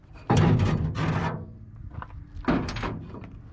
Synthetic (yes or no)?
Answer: no